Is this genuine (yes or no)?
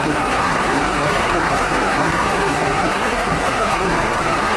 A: no